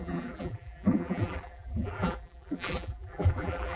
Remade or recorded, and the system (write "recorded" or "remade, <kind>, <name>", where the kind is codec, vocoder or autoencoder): remade, vocoder, BigVGAN v2